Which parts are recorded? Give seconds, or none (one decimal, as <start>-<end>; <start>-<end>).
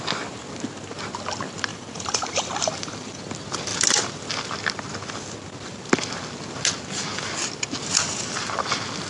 0.0-1.7; 3.2-9.1